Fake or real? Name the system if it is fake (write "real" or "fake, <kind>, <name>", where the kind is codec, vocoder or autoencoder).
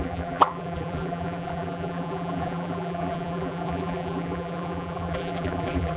fake, vocoder, BigVGAN v2